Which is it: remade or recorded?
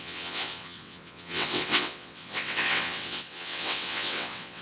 remade